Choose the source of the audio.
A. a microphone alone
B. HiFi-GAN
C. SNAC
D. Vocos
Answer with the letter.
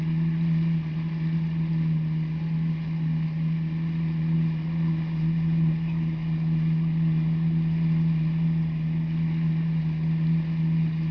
A